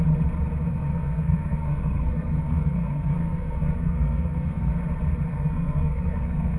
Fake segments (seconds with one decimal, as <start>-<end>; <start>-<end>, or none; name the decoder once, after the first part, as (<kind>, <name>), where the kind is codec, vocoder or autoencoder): 0.7-4.7 (codec, SNAC); 5.3-6.6